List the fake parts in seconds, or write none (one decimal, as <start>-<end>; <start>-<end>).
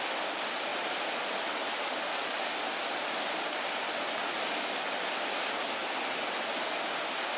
none